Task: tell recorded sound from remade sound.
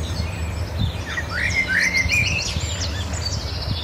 recorded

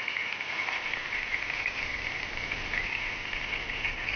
recorded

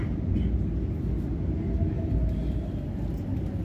recorded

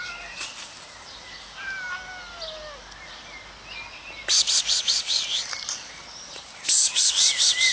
recorded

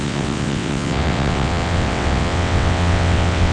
remade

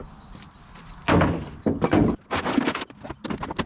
recorded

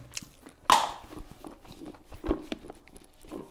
recorded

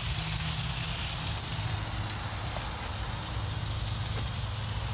recorded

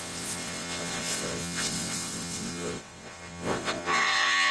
remade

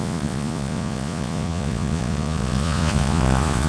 remade